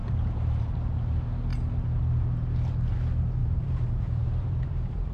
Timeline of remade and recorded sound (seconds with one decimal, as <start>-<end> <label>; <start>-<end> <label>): 0.0-0.6 remade; 0.6-3.4 recorded; 3.4-5.1 remade